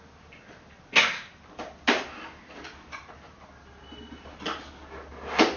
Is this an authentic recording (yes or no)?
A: yes